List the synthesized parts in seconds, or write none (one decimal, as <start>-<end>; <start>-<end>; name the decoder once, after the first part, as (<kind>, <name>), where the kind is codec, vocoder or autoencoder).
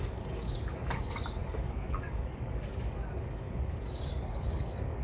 0.0-5.0 (codec, DAC)